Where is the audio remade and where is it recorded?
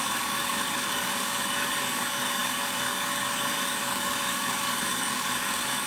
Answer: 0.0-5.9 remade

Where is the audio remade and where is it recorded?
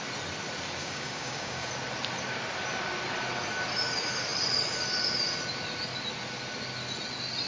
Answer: 0.0-0.8 recorded; 0.8-1.7 remade; 1.7-7.5 recorded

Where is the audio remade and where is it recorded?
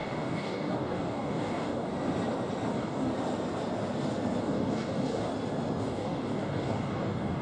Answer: 0.0-1.9 remade; 1.9-2.7 recorded; 2.7-3.1 remade; 3.1-4.4 recorded; 4.4-5.3 remade; 5.3-5.8 recorded; 5.8-7.4 remade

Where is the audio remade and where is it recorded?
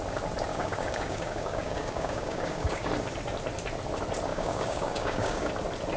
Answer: 0.0-0.5 recorded; 0.5-2.9 remade; 2.9-4.3 recorded; 4.3-5.5 remade; 5.5-6.0 recorded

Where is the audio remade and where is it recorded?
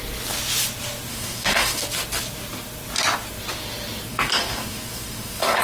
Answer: 0.0-1.1 recorded; 1.1-1.8 remade; 1.8-4.1 recorded; 4.1-5.6 remade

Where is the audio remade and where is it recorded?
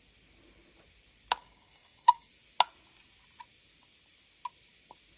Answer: 0.0-1.4 recorded; 1.4-2.3 remade; 2.3-5.2 recorded